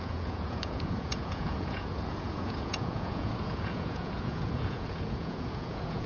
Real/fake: fake